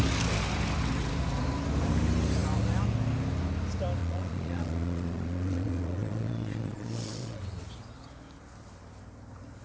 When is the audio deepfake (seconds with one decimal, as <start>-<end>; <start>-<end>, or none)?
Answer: 4.0-7.4